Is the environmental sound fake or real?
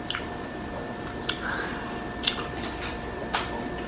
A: real